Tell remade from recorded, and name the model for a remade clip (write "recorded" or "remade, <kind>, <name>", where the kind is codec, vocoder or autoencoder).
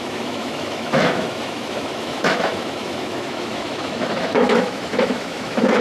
remade, autoencoder, DAC-VAE